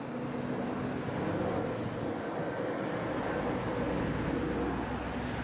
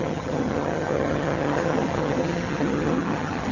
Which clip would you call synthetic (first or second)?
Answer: second